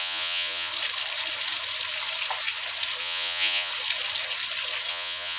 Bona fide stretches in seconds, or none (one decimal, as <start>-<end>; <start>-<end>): 0.7-3.0; 3.7-4.9